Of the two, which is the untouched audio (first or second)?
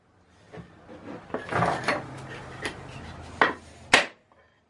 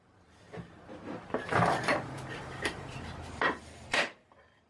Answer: first